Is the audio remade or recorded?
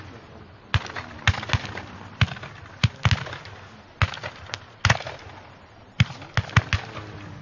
recorded